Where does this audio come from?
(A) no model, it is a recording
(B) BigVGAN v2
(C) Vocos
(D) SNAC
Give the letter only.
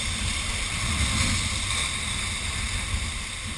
A